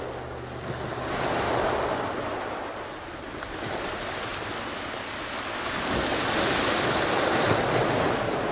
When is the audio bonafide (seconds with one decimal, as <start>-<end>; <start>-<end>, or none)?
0.0-8.5